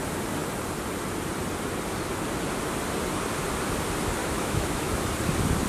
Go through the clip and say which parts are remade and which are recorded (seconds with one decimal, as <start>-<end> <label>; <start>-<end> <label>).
0.0-4.2 recorded; 4.2-5.0 remade; 5.0-5.7 recorded